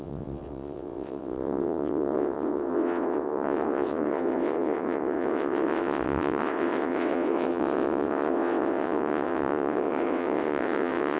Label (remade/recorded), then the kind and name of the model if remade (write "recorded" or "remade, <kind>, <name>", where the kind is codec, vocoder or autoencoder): remade, vocoder, WaveNeXt